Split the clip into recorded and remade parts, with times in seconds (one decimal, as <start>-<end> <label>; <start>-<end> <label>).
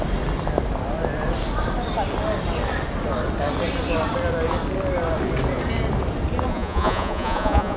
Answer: 0.0-6.5 recorded; 6.5-7.8 remade